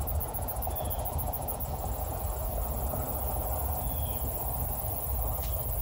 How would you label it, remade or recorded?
remade